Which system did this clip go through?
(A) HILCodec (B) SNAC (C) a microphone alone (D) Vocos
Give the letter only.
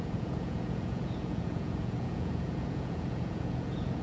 D